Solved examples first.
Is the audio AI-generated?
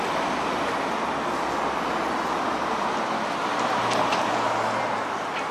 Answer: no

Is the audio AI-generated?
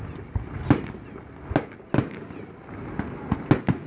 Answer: no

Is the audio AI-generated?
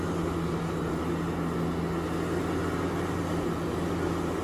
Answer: no